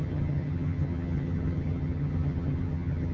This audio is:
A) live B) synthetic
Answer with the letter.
B